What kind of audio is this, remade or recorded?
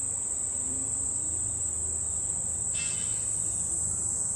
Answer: recorded